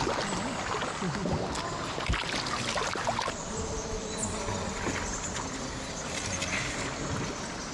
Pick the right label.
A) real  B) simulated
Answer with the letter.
A